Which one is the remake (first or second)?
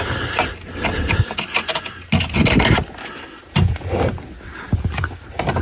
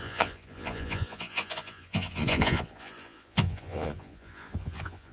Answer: second